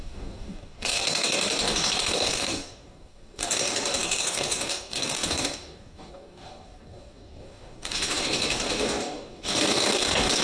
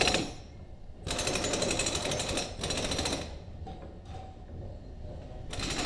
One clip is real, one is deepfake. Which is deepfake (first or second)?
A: first